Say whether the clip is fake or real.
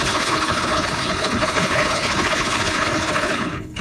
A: fake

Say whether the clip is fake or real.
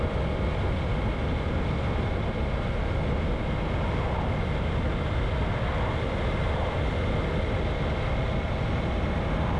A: real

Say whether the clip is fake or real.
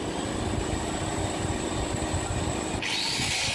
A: real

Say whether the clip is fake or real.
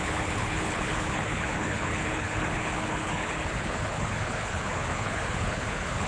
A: fake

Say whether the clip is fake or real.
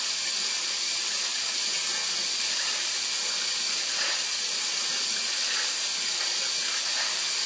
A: real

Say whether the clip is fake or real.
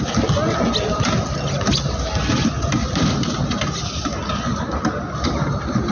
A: real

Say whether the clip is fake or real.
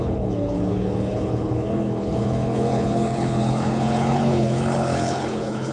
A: fake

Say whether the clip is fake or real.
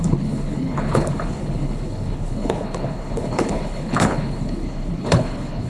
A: fake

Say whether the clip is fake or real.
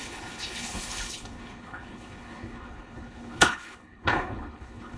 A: fake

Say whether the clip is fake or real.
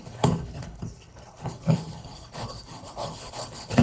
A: fake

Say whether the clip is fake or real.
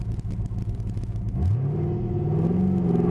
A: real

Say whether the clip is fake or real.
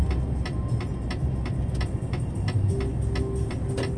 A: real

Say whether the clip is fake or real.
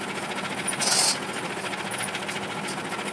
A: real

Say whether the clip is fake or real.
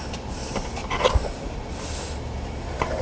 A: real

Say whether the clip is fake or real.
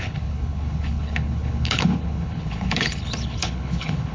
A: fake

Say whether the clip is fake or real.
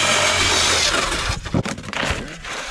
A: real